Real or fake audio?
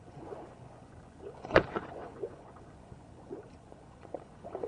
fake